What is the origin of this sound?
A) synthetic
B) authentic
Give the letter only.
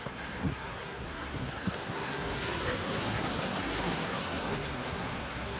A